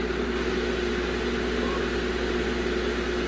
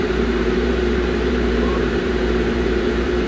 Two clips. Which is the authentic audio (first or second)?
first